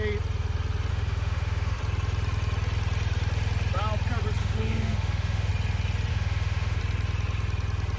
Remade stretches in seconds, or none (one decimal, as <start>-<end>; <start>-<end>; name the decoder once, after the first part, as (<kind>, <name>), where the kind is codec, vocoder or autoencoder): 0.9-1.8 (autoencoder, DAC-VAE); 4.4-5.5; 6.1-6.8